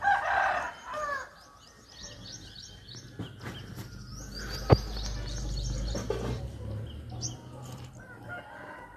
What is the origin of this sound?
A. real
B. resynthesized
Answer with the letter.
A